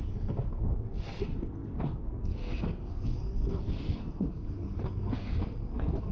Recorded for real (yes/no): no